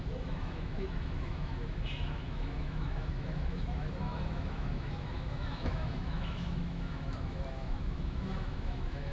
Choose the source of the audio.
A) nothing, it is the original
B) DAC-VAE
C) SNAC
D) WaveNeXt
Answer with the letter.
B